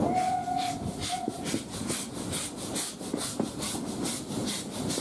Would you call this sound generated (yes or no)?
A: no